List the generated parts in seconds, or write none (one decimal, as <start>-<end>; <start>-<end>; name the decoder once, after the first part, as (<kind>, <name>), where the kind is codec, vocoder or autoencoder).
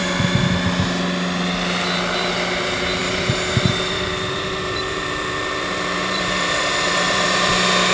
3.0-7.5 (vocoder, BigVGAN v2)